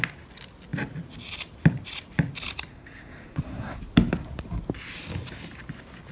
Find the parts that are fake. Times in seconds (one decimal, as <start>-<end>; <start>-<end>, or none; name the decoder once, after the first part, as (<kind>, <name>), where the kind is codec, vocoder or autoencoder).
2.7-3.8 (codec, SNAC)